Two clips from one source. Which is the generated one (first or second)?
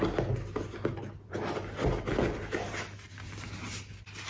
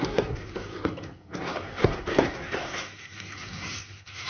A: second